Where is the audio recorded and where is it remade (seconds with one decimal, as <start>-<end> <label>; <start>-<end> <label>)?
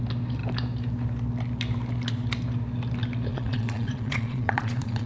0.0-3.3 recorded; 3.3-5.1 remade